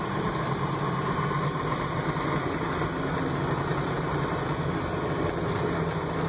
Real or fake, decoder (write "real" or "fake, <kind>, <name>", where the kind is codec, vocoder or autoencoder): real